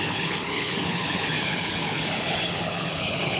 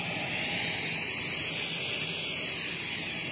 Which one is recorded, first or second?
second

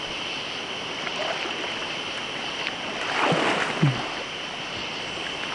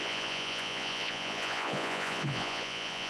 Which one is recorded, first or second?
first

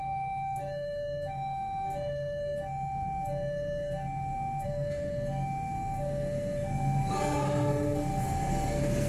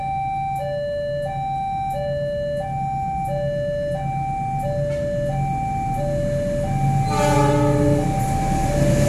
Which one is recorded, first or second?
second